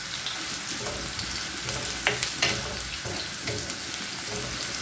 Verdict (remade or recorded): recorded